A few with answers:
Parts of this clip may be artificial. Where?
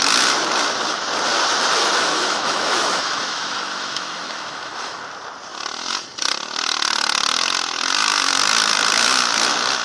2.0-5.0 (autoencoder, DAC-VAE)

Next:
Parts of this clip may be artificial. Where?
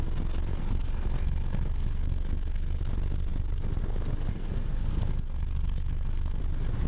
0.5-2.8 (codec, SNAC); 4.3-6.4